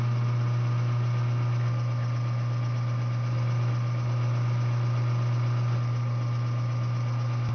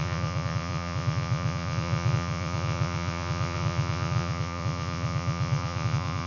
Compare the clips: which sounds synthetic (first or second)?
second